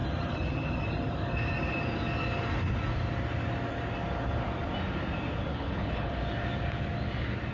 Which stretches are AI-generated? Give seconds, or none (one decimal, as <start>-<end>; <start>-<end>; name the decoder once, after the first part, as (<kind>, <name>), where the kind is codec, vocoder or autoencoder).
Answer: 5.5-6.2 (codec, HILCodec)